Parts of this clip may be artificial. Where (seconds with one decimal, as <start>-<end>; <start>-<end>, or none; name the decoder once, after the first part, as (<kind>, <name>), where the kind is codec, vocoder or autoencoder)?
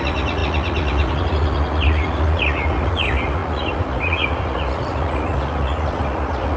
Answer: 0.0-6.6 (vocoder, Vocos)